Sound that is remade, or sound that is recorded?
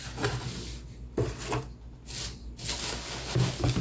recorded